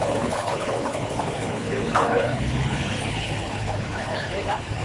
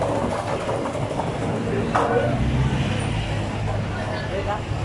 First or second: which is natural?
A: second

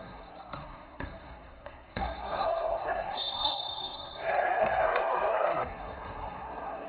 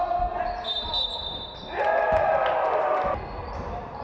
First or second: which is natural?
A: second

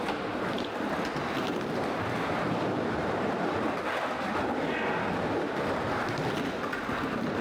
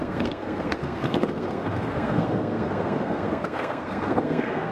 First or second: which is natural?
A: first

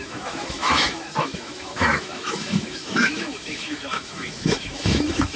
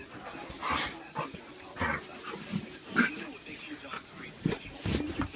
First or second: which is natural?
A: second